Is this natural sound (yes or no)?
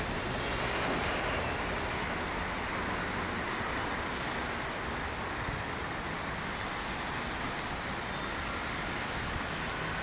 yes